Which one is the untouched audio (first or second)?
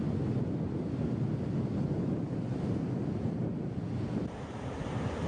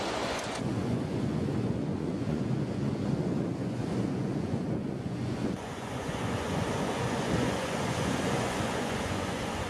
first